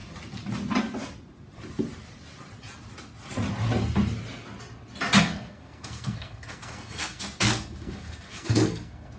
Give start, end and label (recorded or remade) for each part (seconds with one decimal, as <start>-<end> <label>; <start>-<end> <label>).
0.0-5.2 recorded; 5.2-9.2 remade